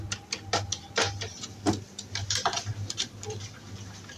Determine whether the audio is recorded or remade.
recorded